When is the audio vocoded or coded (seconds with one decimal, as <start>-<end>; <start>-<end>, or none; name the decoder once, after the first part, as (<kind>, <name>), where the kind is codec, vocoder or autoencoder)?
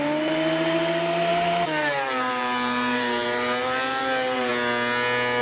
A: 1.3-4.5 (vocoder, BigVGAN v2)